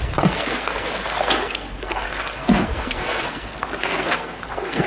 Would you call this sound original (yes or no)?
no